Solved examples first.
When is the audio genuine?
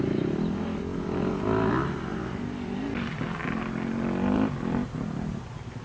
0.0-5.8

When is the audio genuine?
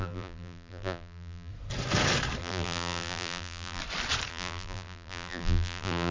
1.5-2.4; 3.8-4.3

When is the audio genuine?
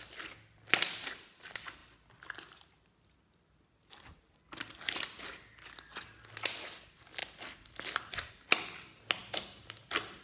0.0-10.2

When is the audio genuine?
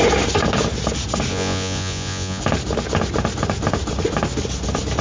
0.0-1.3; 2.4-5.0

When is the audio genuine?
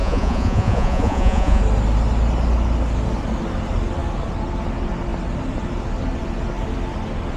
1.6-7.4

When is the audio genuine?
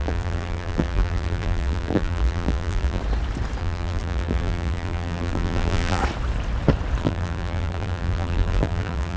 3.0-3.6; 6.0-7.0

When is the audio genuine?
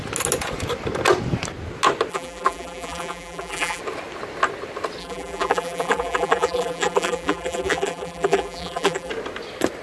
0.0-2.1; 3.8-5.0; 9.1-9.8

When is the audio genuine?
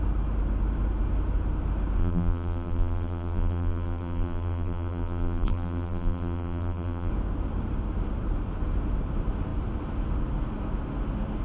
0.0-2.0; 7.1-11.4